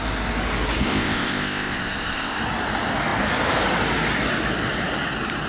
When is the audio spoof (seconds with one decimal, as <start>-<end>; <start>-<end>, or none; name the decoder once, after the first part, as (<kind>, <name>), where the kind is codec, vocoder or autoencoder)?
0.8-2.4 (codec, ZipCodec)